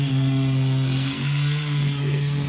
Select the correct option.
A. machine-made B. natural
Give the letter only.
A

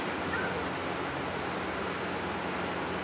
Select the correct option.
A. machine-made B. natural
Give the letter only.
B